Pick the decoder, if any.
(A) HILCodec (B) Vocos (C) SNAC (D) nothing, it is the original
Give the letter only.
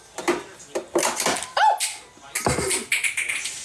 D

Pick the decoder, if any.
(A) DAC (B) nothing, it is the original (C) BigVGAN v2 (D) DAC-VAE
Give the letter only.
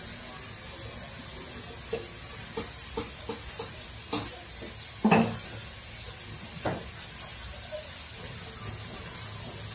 B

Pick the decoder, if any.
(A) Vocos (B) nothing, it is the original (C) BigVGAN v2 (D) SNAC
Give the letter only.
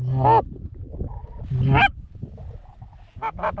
B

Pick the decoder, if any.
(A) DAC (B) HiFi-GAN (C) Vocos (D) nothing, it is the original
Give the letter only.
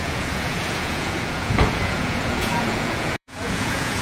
C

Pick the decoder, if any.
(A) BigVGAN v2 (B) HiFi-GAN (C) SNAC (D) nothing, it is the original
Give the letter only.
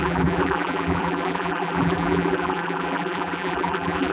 A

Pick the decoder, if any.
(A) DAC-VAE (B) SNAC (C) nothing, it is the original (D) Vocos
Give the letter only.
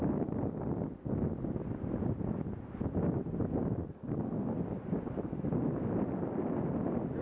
C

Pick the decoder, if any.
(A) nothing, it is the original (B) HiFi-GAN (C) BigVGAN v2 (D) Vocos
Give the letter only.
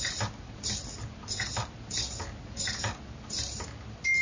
A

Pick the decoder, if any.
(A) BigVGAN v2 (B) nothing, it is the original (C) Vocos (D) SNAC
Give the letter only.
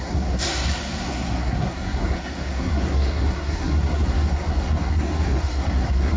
D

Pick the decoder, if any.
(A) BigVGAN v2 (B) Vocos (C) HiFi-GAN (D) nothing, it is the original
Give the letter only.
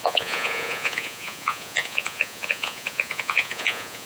B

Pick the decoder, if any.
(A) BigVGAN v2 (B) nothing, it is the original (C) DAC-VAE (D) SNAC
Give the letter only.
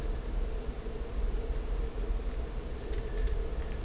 B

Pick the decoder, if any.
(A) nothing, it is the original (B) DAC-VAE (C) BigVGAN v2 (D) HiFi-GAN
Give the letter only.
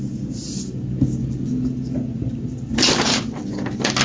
A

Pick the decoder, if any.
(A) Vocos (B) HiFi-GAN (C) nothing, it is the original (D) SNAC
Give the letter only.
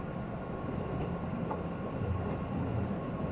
C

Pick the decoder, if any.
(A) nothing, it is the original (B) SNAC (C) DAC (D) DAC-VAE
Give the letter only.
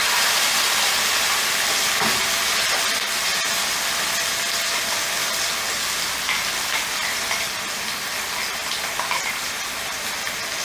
A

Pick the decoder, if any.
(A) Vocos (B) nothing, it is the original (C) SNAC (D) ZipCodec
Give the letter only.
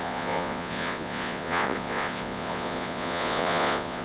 A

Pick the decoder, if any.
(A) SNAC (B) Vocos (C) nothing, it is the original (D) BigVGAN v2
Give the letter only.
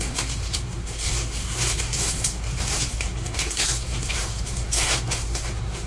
A